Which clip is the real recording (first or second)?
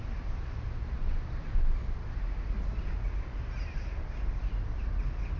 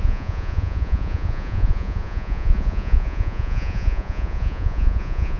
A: first